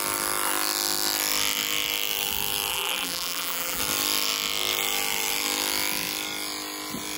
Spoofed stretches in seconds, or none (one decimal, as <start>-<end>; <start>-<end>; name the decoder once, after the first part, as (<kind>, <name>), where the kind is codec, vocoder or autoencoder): 2.7-3.8 (vocoder, BigVGAN v2)